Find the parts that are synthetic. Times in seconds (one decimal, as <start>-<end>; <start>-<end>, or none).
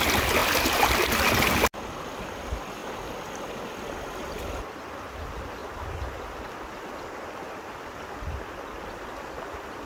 none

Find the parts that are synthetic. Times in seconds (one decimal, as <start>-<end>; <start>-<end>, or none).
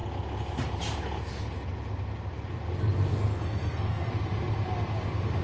3.1-4.1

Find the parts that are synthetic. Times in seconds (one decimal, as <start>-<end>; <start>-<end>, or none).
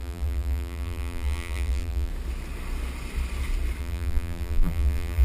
0.0-2.1; 3.8-5.2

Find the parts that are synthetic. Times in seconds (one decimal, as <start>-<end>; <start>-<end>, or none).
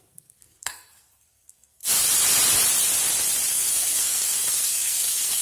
0.0-1.8; 3.5-5.4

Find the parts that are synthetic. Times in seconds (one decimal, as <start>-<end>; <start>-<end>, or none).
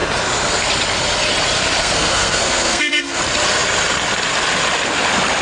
1.8-3.2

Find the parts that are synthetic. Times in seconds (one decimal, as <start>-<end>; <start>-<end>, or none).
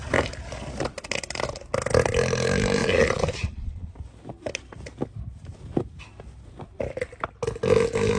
2.8-3.9